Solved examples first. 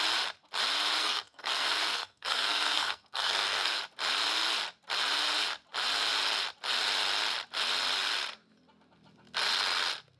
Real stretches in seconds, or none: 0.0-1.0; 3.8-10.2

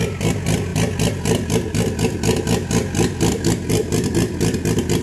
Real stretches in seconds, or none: 0.0-5.0

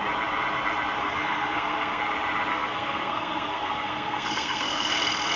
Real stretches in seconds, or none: 0.0-1.0; 2.0-2.5; 4.9-5.4

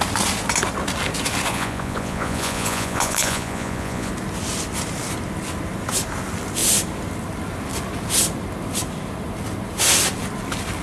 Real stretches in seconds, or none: 0.0-1.5; 4.1-10.8

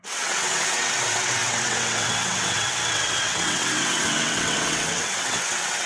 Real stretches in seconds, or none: none